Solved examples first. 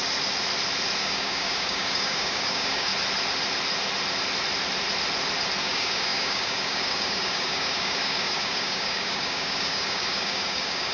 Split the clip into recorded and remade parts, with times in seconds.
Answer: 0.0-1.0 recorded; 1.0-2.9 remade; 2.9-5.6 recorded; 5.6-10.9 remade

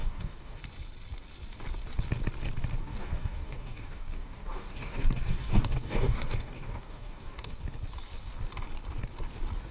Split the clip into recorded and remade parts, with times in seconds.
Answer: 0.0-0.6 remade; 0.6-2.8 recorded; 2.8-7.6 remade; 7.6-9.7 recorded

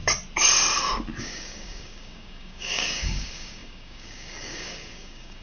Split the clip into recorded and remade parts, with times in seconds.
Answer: 0.0-1.2 recorded; 1.2-5.4 remade

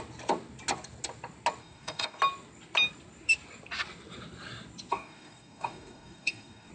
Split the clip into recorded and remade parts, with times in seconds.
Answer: 0.0-1.6 recorded; 1.6-2.2 remade; 2.2-4.9 recorded; 4.9-6.7 remade

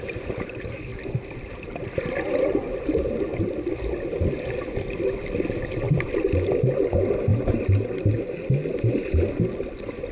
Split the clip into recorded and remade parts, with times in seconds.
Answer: 0.0-10.1 recorded

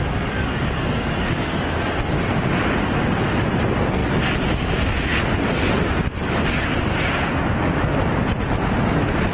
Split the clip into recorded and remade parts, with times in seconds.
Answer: 0.0-9.3 recorded

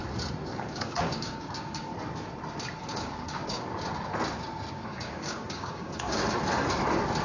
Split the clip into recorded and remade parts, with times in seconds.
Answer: 0.0-0.5 recorded; 0.5-1.9 remade; 1.9-2.9 recorded; 2.9-3.7 remade; 3.7-4.7 recorded; 4.7-6.2 remade; 6.2-7.2 recorded

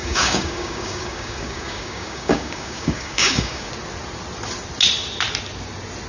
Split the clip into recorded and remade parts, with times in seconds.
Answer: 0.0-3.7 remade; 3.7-6.1 recorded